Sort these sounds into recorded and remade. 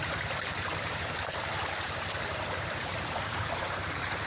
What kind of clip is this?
remade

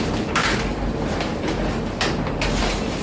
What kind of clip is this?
recorded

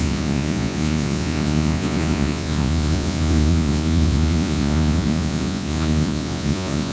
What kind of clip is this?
remade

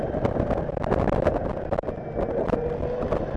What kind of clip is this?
recorded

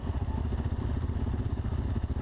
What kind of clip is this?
recorded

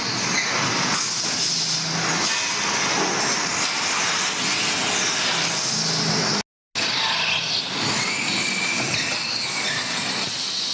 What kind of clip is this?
recorded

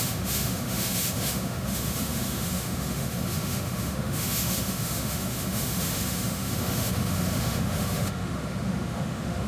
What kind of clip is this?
remade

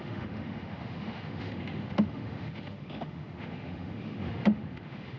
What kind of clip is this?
remade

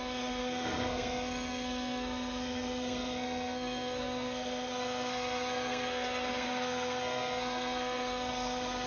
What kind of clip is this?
remade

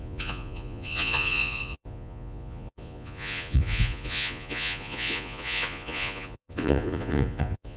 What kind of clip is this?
remade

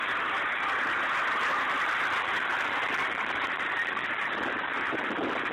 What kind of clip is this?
recorded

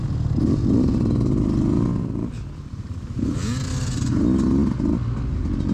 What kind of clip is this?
recorded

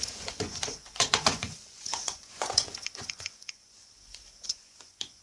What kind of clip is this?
remade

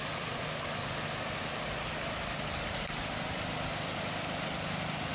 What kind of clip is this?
recorded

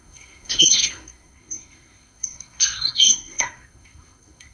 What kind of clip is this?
remade